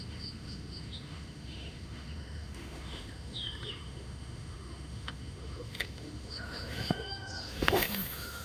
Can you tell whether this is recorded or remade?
remade